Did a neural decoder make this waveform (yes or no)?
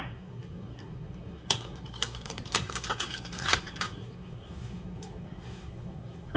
yes